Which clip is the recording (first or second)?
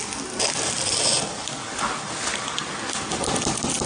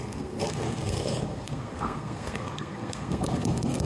first